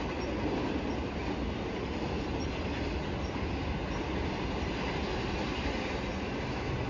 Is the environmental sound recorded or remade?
recorded